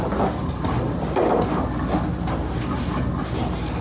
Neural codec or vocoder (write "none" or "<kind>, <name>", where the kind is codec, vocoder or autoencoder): none